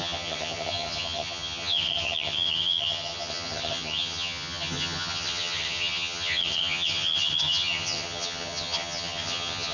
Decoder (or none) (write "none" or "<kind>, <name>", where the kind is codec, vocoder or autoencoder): vocoder, HiFi-GAN